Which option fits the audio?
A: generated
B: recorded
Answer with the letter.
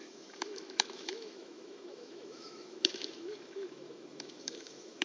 A